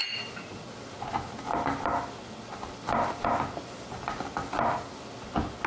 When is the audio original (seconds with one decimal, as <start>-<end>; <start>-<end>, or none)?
0.0-5.7